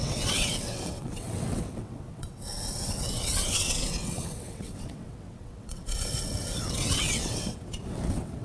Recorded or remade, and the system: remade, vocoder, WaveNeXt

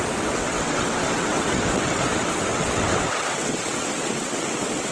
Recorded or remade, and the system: remade, vocoder, WaveNeXt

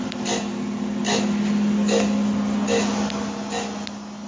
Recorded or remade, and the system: recorded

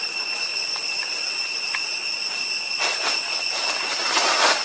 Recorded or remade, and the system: recorded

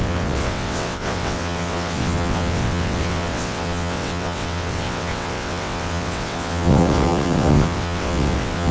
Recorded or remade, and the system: remade, vocoder, WaveNeXt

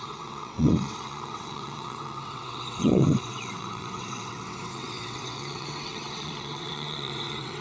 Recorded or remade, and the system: remade, vocoder, WaveNeXt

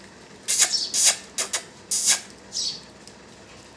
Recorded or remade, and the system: recorded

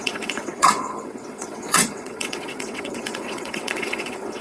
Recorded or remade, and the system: remade, vocoder, WaveNeXt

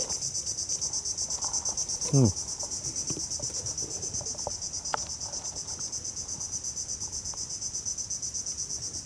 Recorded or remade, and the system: recorded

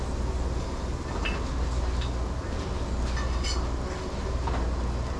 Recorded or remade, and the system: recorded